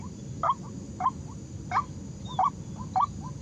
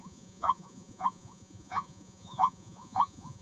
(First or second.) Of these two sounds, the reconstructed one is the second